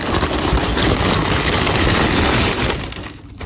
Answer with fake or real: real